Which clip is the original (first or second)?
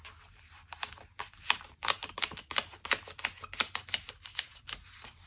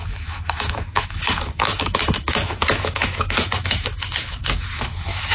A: first